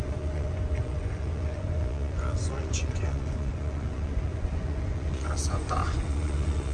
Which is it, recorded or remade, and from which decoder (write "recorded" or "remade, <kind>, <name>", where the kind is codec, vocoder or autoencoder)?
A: remade, vocoder, Vocos